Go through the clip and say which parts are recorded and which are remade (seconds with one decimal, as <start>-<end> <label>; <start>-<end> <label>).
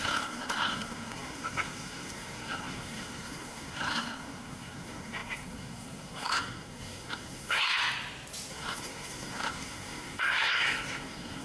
0.0-7.8 remade; 7.8-8.5 recorded; 8.5-11.4 remade